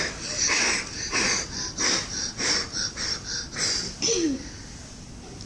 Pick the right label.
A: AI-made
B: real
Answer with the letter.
B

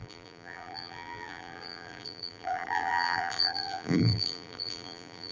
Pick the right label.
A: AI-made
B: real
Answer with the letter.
A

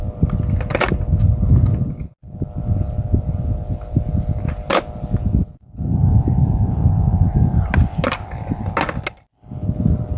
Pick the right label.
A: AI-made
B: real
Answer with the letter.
B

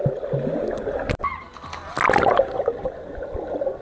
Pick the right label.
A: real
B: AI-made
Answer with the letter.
A